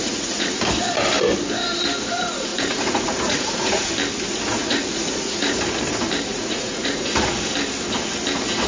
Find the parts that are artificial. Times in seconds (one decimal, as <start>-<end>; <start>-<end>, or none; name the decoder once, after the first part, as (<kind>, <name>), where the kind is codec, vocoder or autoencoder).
0.0-0.6 (vocoder, Vocos); 2.5-3.9; 4.6-5.6; 6.3-7.1